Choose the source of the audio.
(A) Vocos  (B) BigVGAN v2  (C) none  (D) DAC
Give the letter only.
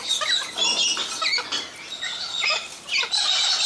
C